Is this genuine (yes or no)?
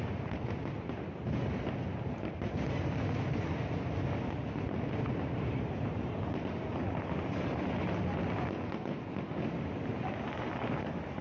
yes